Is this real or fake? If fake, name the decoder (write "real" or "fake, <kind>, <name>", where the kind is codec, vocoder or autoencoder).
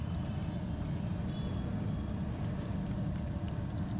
real